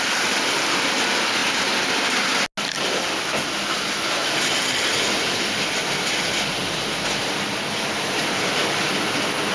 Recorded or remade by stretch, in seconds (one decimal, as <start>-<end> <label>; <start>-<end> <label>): 0.0-4.2 recorded; 4.2-5.7 remade; 5.7-6.6 recorded; 6.6-8.6 remade; 8.6-9.5 recorded

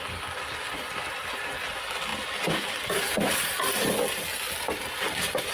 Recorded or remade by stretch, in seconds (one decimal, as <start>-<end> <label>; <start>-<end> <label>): 0.0-5.5 recorded

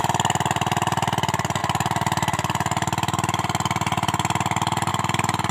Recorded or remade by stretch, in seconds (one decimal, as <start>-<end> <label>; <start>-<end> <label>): 0.0-5.5 recorded

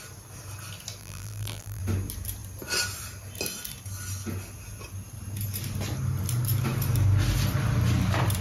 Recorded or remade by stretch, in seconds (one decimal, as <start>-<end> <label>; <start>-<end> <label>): 0.0-1.0 recorded; 1.0-1.8 remade; 1.8-8.4 recorded